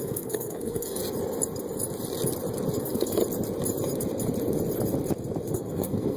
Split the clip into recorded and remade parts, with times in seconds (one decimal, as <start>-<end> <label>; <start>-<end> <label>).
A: 0.0-1.0 remade; 1.0-2.8 recorded; 2.8-3.2 remade; 3.2-5.5 recorded; 5.5-6.2 remade